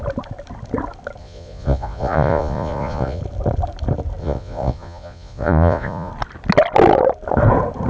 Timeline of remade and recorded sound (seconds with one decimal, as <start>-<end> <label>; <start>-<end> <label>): 0.0-1.2 recorded; 1.2-3.2 remade; 3.2-4.2 recorded; 4.2-6.1 remade; 6.1-7.9 recorded